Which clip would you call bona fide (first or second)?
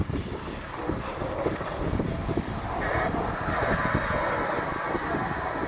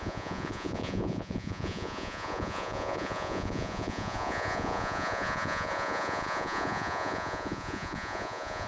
first